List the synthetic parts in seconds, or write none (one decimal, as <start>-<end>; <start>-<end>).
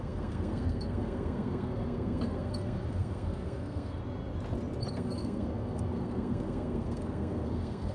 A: 0.0-4.0; 4.9-7.9